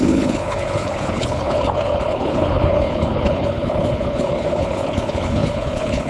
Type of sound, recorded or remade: remade